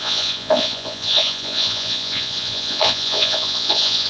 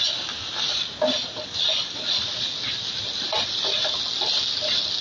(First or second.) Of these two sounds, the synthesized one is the first